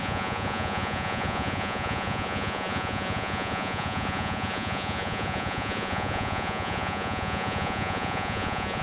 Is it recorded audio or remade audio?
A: remade